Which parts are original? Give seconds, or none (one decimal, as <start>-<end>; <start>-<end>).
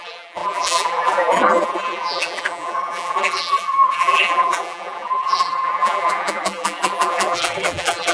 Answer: none